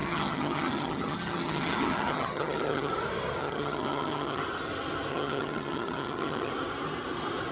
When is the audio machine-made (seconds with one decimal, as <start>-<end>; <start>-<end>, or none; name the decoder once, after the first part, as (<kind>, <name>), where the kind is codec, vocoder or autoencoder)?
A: 0.0-2.9 (vocoder, HiFi-GAN); 3.4-4.4; 5.1-6.5